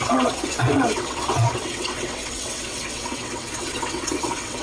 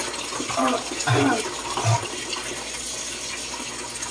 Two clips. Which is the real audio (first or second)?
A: second